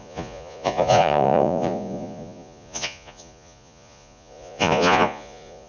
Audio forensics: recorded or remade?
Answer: remade